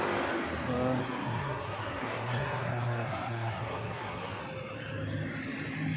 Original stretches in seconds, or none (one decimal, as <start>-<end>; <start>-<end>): 0.0-1.0; 4.4-6.0